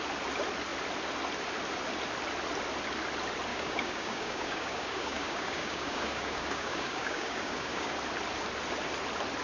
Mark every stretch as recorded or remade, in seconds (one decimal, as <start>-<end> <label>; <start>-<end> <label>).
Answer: 0.0-3.5 recorded; 3.5-7.9 remade; 7.9-9.4 recorded